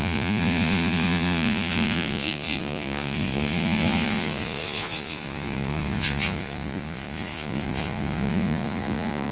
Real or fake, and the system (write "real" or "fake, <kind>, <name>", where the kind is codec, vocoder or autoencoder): fake, vocoder, Vocos